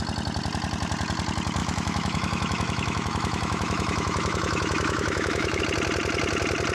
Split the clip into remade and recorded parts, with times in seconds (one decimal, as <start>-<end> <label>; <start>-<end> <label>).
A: 0.0-1.6 recorded; 1.6-5.6 remade; 5.6-6.7 recorded